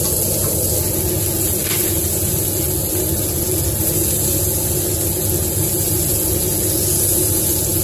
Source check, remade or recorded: recorded